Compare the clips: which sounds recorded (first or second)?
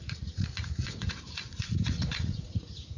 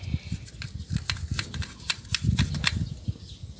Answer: second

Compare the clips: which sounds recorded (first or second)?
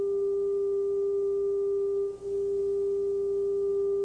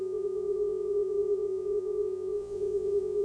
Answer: first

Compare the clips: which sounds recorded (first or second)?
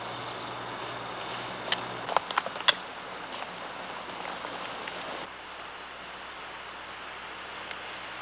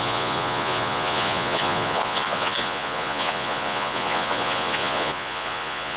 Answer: first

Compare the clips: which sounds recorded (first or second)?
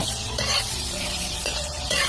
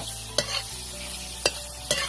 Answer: second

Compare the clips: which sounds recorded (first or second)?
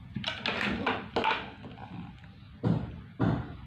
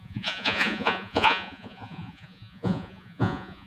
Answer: first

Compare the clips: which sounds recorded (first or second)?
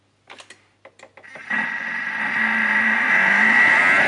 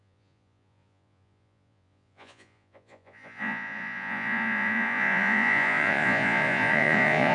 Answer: first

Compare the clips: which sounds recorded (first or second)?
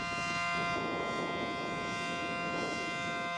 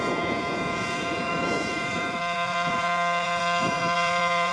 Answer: first